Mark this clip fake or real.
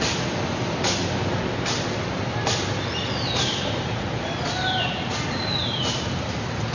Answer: real